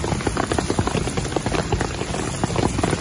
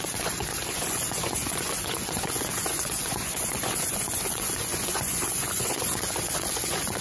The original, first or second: first